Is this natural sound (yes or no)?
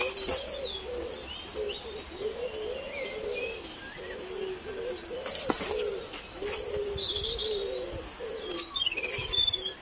yes